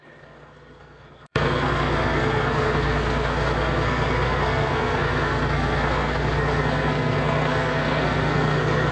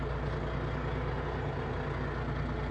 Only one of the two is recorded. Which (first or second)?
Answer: second